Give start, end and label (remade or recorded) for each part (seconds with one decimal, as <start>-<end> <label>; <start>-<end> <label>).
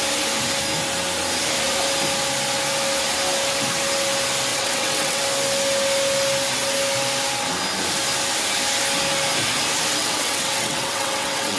0.0-4.5 recorded; 4.5-5.2 remade; 5.2-10.0 recorded; 10.0-11.6 remade